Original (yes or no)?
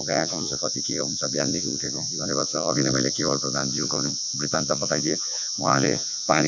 no